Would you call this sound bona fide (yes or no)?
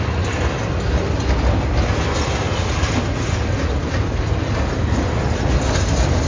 yes